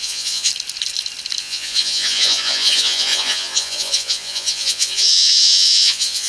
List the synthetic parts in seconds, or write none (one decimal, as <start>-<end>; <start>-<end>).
0.0-0.5; 1.4-6.3